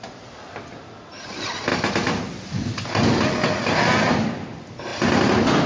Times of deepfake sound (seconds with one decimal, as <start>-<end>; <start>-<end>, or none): none